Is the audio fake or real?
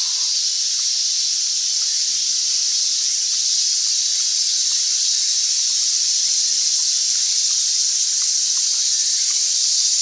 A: real